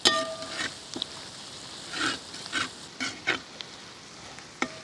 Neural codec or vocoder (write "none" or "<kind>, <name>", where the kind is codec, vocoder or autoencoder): none